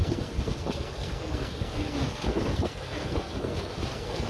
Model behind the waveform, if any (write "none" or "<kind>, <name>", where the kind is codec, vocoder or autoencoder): codec, SNAC